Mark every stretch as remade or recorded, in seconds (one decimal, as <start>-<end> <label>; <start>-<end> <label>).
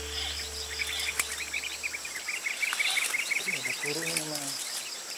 0.0-5.2 recorded